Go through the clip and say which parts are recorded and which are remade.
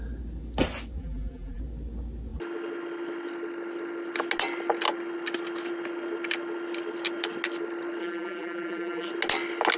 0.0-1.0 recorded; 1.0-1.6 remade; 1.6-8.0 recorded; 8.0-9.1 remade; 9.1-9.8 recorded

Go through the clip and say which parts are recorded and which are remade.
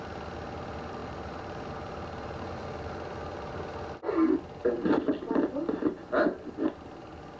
0.0-1.0 recorded; 1.0-2.4 remade; 2.4-4.6 recorded; 4.6-6.1 remade; 6.1-7.4 recorded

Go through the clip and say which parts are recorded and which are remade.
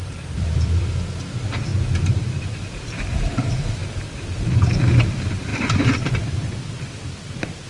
0.0-1.7 remade; 1.7-2.4 recorded; 2.4-3.8 remade; 3.8-4.4 recorded; 4.4-7.7 remade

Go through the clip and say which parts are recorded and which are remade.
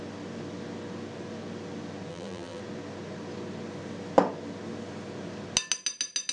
0.0-2.1 recorded; 2.1-2.6 remade; 2.6-6.3 recorded